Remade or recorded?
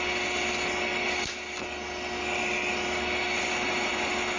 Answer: recorded